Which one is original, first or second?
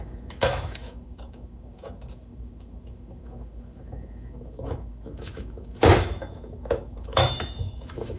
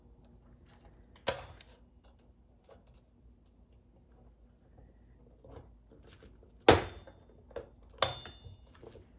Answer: second